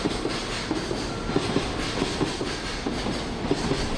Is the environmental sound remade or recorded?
recorded